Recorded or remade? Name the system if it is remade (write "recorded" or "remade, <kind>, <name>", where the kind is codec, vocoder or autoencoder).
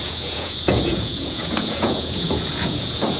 remade, vocoder, Vocos